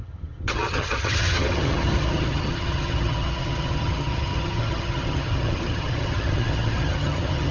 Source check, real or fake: fake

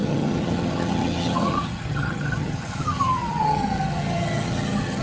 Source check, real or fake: fake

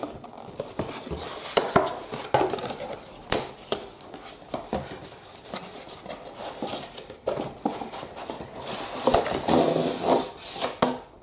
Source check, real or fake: real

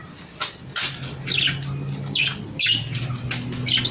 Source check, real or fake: real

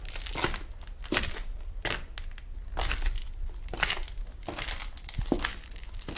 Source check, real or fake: real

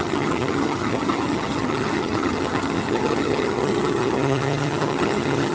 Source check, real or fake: fake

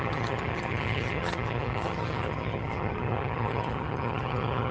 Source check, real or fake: fake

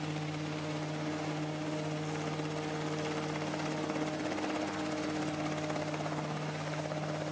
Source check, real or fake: real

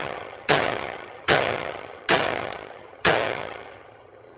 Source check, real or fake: fake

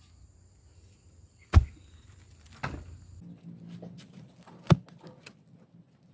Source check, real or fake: real